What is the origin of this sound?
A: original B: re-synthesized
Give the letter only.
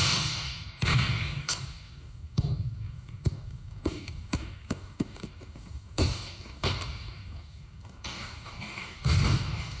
B